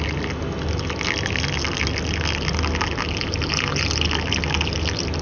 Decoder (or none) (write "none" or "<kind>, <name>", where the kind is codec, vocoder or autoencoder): none